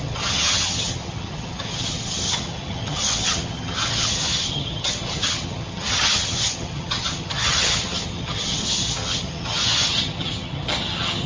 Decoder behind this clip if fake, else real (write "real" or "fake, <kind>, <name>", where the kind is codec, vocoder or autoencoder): fake, vocoder, HiFi-GAN